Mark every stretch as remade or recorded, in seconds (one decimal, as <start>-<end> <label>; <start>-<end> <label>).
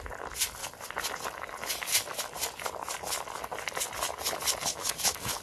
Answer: 0.0-4.7 recorded; 4.7-5.4 remade